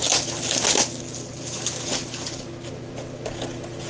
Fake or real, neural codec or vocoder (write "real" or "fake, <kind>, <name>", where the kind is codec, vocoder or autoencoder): fake, vocoder, BigVGAN v2